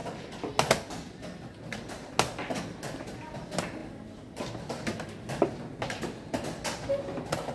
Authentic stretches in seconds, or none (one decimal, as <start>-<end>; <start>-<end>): 0.0-7.5